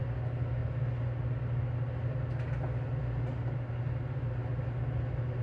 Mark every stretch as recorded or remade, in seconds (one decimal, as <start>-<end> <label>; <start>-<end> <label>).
0.0-5.4 recorded